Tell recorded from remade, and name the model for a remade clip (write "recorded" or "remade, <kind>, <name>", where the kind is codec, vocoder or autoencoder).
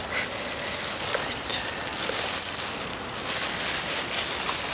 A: recorded